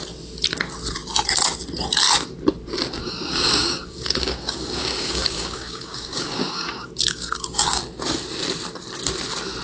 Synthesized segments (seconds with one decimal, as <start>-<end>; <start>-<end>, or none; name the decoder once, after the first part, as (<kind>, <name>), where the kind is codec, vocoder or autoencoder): 3.0-7.8 (codec, DAC)